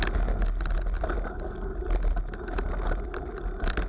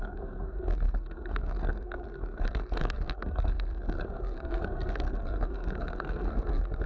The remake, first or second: second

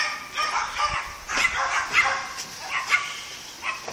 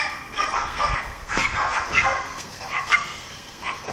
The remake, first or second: second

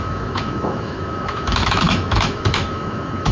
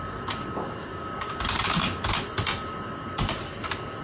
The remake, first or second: first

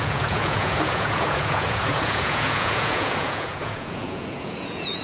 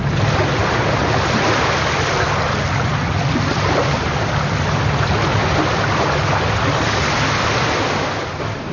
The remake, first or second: first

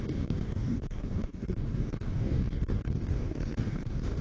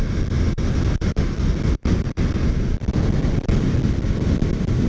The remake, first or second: first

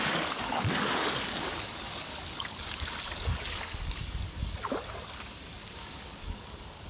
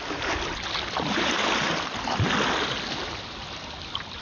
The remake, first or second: first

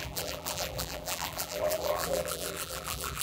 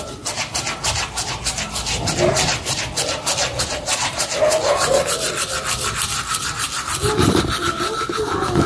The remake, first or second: first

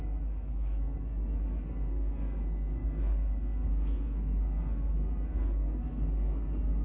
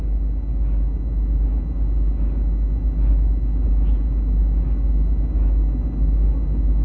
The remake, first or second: first